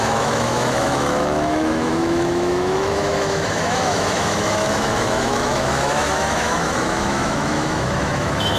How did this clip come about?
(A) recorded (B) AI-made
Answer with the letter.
B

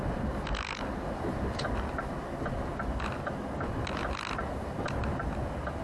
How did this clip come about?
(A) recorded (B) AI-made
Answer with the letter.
A